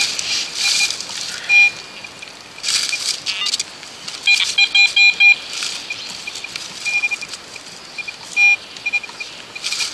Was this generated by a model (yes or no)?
no